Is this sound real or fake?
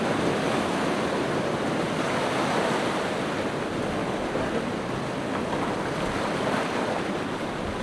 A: real